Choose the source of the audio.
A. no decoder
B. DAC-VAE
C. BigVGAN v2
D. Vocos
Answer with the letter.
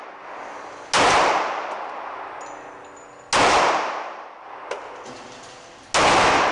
A